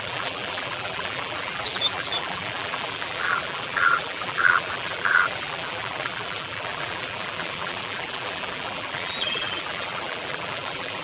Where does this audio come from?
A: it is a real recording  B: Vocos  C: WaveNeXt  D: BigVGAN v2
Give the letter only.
D